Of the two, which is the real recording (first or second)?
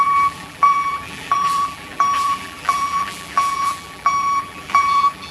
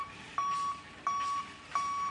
second